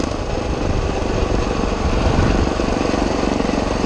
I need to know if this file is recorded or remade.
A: remade